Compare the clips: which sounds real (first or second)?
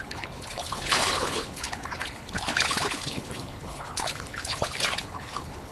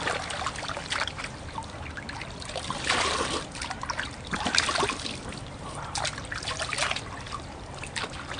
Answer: second